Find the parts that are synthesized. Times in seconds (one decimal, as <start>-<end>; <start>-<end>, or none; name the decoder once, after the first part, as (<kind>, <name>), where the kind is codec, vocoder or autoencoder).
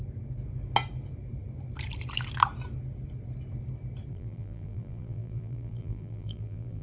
4.1-6.8 (vocoder, BigVGAN v2)